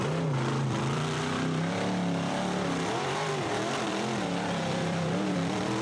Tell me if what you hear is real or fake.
fake